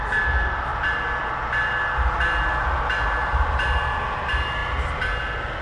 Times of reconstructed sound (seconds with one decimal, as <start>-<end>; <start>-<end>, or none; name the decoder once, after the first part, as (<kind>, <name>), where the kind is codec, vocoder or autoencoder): 0.7-1.7 (vocoder, BigVGAN v2)

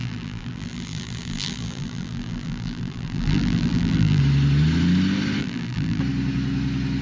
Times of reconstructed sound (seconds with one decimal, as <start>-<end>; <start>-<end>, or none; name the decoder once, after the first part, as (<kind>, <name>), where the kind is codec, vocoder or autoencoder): 0.0-4.2 (vocoder, BigVGAN v2); 5.4-6.0